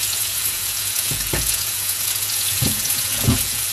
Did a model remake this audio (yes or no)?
yes